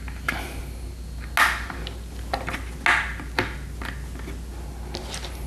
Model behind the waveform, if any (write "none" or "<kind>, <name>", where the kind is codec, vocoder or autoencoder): none